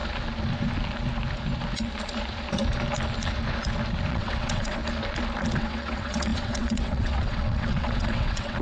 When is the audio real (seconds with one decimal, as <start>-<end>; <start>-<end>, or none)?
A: 0.0-4.1; 4.8-5.6